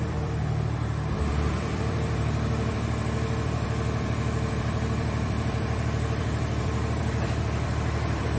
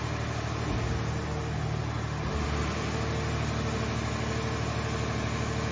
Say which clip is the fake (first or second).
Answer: first